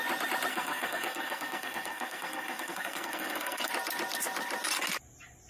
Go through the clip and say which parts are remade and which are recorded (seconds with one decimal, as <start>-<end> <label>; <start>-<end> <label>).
0.0-0.5 recorded; 0.5-3.7 remade; 3.7-5.5 recorded